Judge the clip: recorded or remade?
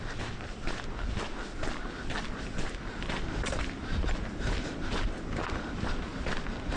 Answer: recorded